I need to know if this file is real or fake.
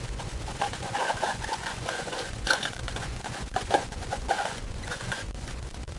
fake